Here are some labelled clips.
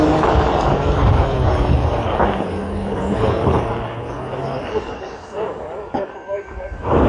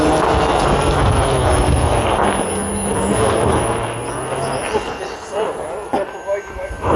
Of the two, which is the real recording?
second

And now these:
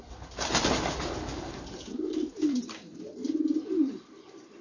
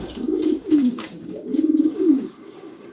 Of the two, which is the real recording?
first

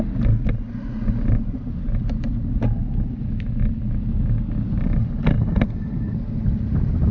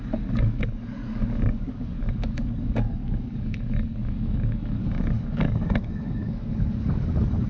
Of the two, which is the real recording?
first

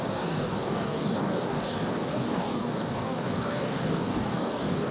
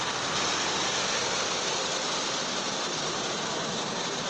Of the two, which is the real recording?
second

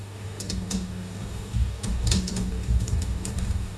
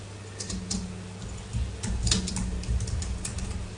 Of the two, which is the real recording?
second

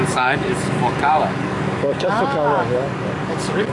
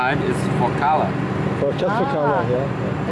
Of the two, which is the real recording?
second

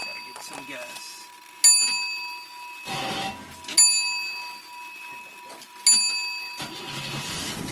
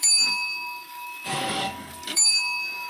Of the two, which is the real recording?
first